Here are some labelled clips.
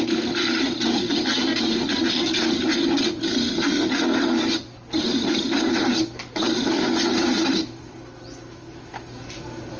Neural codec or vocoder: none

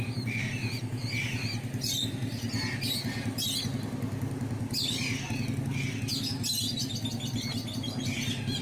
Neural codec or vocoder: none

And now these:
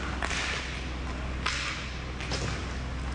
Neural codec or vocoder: none